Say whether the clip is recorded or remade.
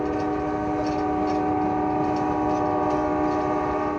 recorded